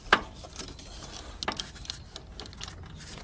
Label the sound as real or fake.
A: real